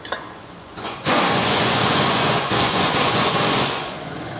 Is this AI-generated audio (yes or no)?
yes